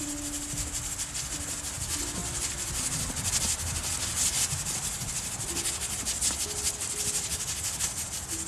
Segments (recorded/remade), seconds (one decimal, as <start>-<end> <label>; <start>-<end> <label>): 0.0-8.5 recorded